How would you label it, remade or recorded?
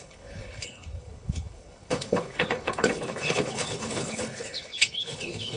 remade